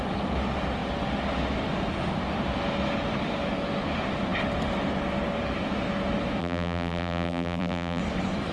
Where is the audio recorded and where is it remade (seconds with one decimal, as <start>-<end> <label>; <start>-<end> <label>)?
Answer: 0.0-6.4 recorded; 6.4-8.0 remade; 8.0-8.5 recorded